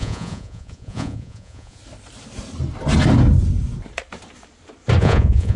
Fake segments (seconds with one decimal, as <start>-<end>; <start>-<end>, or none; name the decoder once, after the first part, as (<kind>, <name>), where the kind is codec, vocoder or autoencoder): 0.0-1.8 (vocoder, Vocos); 5.0-5.6